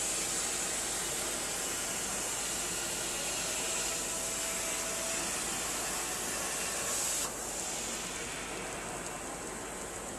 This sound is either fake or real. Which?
real